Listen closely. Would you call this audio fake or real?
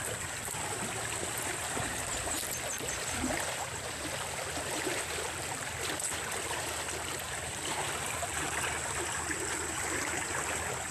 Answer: real